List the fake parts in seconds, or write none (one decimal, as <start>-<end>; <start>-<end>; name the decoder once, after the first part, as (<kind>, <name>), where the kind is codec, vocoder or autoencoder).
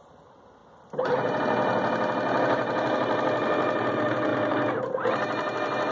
none